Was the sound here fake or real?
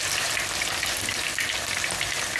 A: real